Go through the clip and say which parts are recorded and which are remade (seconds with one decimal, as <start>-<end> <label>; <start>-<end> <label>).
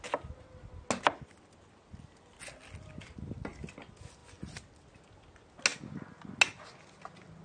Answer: 0.0-7.4 recorded